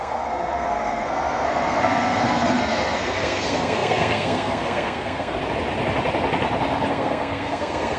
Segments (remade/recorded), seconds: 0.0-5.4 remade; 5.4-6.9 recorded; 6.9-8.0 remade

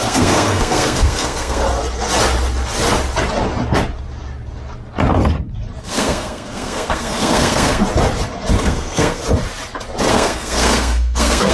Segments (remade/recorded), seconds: 0.0-1.6 remade; 1.6-5.8 recorded; 5.8-7.8 remade; 7.8-8.6 recorded; 8.6-9.2 remade; 9.2-10.1 recorded; 10.1-11.5 remade

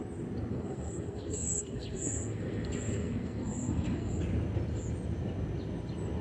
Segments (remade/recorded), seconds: 0.0-0.5 recorded; 0.5-4.2 remade; 4.2-6.2 recorded

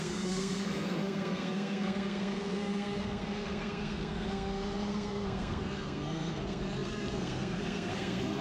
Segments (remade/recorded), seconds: 0.0-8.4 remade

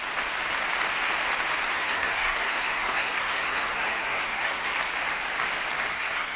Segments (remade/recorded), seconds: 0.0-1.7 recorded; 1.7-4.7 remade; 4.7-5.9 recorded; 5.9-6.4 remade

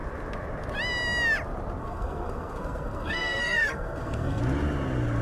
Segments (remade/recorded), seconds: 0.0-1.8 recorded; 1.8-4.4 remade; 4.4-5.2 recorded

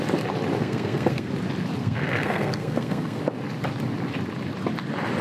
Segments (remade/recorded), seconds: 0.0-0.6 recorded; 0.6-1.3 remade; 1.3-1.8 recorded; 1.8-3.2 remade; 3.2-5.2 recorded